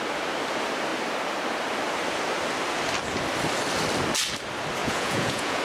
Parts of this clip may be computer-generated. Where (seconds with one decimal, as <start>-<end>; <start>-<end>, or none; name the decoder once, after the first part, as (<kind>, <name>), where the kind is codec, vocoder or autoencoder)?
4.8-5.6 (vocoder, Vocos)